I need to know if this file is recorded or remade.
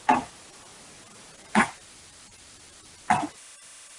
recorded